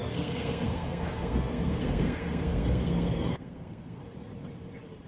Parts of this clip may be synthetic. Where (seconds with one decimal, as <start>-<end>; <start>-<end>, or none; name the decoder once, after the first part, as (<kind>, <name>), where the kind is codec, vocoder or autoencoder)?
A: 0.0-4.0 (codec, SNAC)